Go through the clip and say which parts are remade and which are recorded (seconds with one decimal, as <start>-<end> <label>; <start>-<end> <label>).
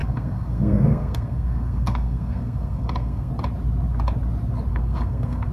0.0-3.3 remade; 3.3-4.7 recorded; 4.7-5.5 remade